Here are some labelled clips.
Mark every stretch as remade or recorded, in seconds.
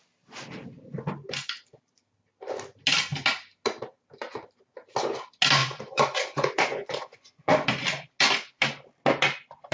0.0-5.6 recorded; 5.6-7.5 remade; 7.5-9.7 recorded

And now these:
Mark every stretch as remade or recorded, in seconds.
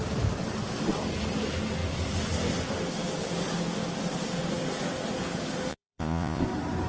0.0-5.7 recorded; 5.7-6.4 remade; 6.4-6.9 recorded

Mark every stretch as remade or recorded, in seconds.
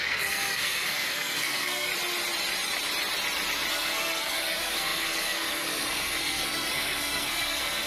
0.0-1.9 remade; 1.9-3.7 recorded; 3.7-7.9 remade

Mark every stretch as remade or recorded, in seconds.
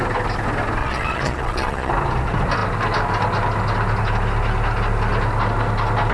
0.0-0.8 recorded; 0.8-1.9 remade; 1.9-6.1 recorded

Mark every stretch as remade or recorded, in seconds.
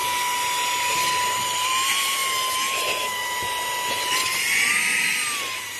0.0-0.8 recorded; 0.8-2.2 remade; 2.2-5.8 recorded